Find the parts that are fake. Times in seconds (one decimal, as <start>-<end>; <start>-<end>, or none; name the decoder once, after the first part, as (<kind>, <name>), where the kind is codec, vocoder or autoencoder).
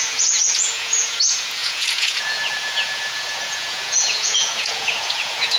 0.0-5.6 (vocoder, Vocos)